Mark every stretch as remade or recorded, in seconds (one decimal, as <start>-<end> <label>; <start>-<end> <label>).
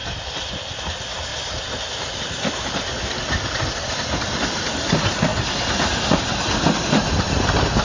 0.0-0.5 remade; 0.5-1.3 recorded; 1.3-2.2 remade; 2.2-3.1 recorded; 3.1-3.9 remade; 3.9-7.8 recorded